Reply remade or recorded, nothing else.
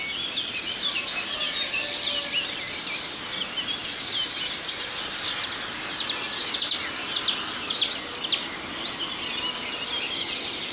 recorded